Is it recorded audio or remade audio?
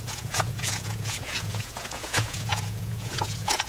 remade